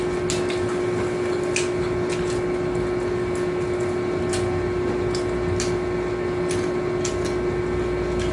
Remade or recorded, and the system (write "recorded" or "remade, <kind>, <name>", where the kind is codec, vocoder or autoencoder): recorded